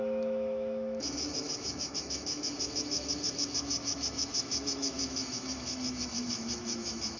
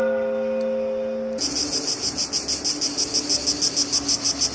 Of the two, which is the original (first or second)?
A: second